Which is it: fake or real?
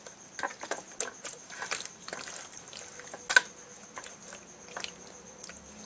real